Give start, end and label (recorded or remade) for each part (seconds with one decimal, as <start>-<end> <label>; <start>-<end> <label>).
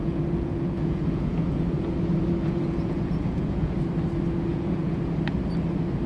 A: 0.0-3.7 remade; 3.7-4.5 recorded; 4.5-5.0 remade; 5.0-6.1 recorded